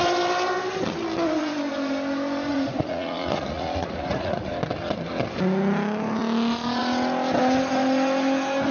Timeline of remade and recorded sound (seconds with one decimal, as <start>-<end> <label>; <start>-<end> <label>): 0.0-2.5 recorded; 2.5-4.5 remade; 4.5-8.7 recorded